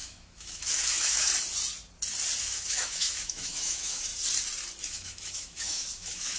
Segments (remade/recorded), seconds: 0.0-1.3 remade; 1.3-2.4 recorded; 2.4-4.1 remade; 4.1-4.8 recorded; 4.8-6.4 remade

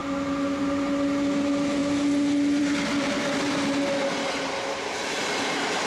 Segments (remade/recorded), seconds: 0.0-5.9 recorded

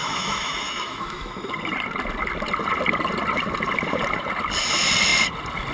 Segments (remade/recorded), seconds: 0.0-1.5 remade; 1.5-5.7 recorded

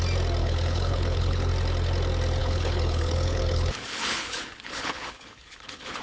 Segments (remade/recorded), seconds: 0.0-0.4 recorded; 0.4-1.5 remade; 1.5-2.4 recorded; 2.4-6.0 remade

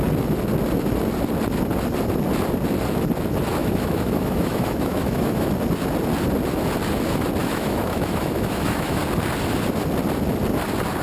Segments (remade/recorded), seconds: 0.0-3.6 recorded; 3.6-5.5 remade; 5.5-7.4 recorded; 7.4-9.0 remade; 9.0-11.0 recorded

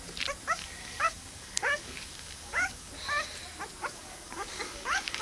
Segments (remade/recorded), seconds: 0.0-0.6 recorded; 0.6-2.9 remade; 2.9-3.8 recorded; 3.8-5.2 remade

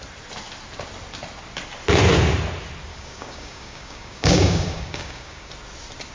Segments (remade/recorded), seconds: 0.0-2.9 recorded; 2.9-5.5 remade; 5.5-6.1 recorded

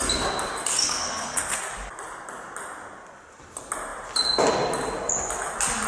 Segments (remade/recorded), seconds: 0.0-0.8 recorded; 0.8-1.6 remade; 1.6-5.9 recorded